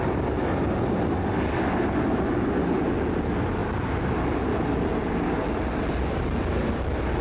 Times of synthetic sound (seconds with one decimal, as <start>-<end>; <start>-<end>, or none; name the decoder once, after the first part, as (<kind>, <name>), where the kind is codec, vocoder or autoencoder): none